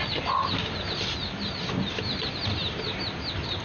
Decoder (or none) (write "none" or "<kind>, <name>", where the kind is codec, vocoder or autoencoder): none